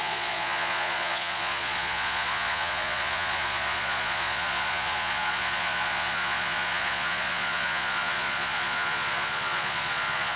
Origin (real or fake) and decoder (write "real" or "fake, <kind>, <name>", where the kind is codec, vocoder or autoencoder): fake, vocoder, Vocos